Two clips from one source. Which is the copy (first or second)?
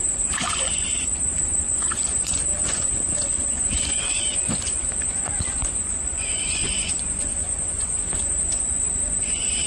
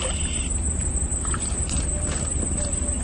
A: first